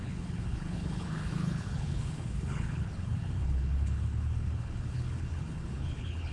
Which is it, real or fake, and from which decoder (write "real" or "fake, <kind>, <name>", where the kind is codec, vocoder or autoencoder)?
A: fake, codec, HILCodec